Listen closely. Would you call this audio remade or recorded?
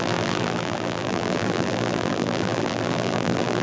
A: remade